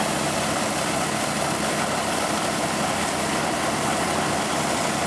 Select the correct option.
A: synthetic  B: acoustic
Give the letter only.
B